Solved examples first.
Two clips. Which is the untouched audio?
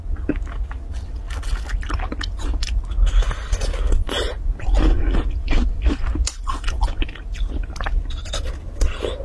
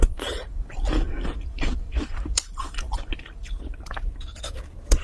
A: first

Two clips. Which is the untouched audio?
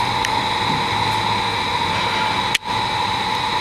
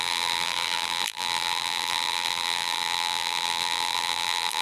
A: first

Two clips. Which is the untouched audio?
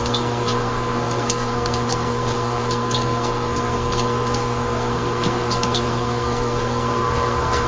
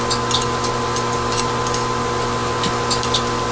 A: second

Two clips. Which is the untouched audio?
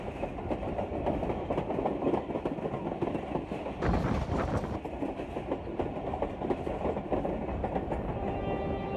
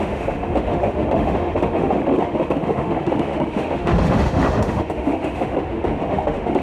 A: first